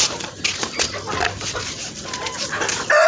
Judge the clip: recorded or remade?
recorded